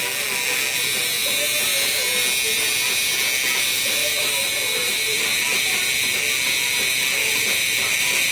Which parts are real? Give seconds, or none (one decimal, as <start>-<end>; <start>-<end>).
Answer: 0.0-4.0; 5.9-7.2